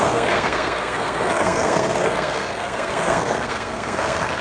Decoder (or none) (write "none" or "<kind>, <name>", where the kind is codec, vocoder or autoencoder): codec, SNAC